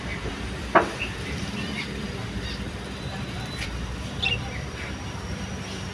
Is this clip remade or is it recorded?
remade